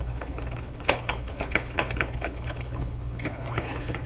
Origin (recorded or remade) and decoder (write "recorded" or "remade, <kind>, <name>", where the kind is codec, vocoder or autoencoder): remade, codec, HILCodec